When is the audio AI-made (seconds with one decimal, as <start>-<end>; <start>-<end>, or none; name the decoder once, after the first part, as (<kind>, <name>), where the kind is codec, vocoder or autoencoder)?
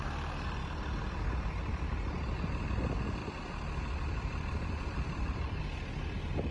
3.2-5.6 (vocoder, BigVGAN v2)